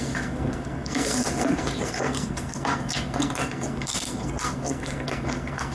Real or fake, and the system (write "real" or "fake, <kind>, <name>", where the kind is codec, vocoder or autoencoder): fake, codec, SNAC